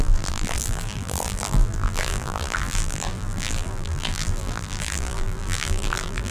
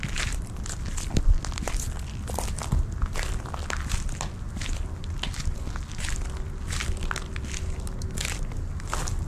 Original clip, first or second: second